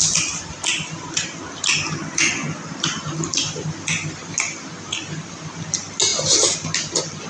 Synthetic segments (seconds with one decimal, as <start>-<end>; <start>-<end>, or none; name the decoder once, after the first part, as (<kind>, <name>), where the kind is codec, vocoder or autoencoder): none